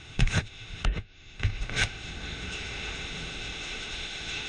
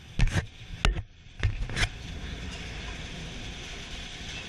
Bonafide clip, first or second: second